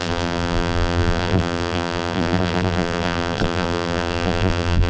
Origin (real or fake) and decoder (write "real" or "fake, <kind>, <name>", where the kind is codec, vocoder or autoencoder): fake, vocoder, BigVGAN v2